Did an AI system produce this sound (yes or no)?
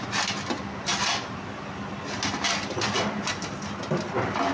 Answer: no